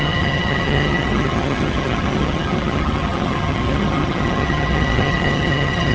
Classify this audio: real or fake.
fake